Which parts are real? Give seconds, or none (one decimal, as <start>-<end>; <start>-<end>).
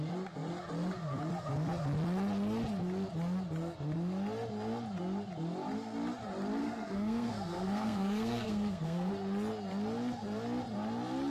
0.0-6.6; 9.1-11.3